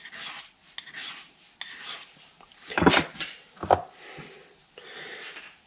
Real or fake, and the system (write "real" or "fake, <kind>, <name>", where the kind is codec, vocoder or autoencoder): real